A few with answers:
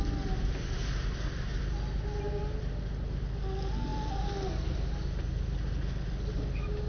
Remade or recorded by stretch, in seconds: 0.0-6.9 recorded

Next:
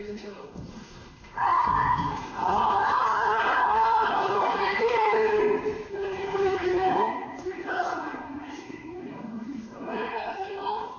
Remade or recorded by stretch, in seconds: 0.0-5.4 remade; 5.4-5.9 recorded; 5.9-11.0 remade

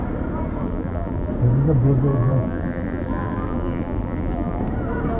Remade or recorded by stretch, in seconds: 0.0-0.6 recorded; 0.6-1.3 remade; 1.3-2.1 recorded; 2.1-4.6 remade; 4.6-5.2 recorded

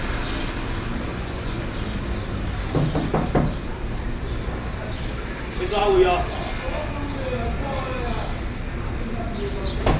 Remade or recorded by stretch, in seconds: 0.0-1.1 recorded; 1.1-1.6 remade; 1.6-10.0 recorded

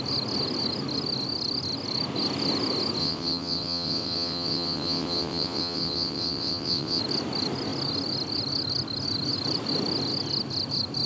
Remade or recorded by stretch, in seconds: 0.0-3.0 recorded; 3.0-7.0 remade; 7.0-11.1 recorded

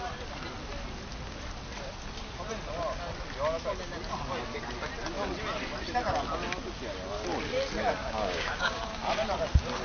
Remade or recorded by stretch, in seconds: 0.0-8.0 recorded; 8.0-8.8 remade; 8.8-9.8 recorded